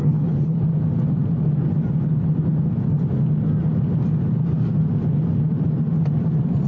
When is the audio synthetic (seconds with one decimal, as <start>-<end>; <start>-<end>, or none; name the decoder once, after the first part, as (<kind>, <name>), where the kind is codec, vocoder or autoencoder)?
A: 0.0-0.6 (codec, HILCodec)